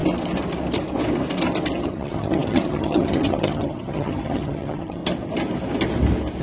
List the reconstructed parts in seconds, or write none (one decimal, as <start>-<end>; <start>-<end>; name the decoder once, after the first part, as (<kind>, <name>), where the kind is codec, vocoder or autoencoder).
1.8-5.0 (vocoder, HiFi-GAN)